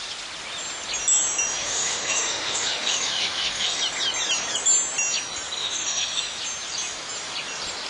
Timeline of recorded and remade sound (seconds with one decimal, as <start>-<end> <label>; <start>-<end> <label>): 0.0-1.6 recorded; 1.6-3.8 remade; 3.8-5.6 recorded; 5.6-6.2 remade; 6.2-7.9 recorded